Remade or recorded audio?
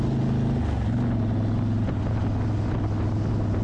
recorded